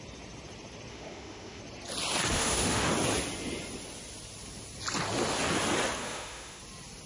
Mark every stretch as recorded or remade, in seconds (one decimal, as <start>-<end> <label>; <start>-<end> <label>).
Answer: 0.0-0.9 recorded; 0.9-1.6 remade; 1.6-2.3 recorded; 2.3-2.9 remade; 2.9-6.0 recorded; 6.0-6.6 remade; 6.6-7.1 recorded